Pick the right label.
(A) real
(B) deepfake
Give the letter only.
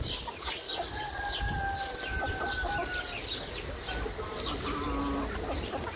A